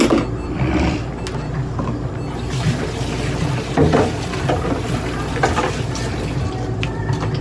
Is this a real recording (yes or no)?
yes